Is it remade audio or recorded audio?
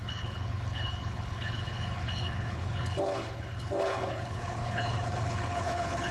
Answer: remade